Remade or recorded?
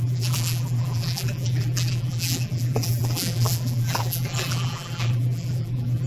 remade